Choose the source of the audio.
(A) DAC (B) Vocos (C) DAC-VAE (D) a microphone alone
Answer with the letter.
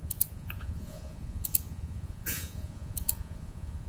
B